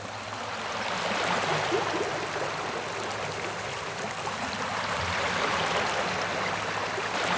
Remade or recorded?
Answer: recorded